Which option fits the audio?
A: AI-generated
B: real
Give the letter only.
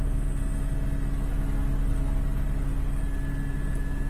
B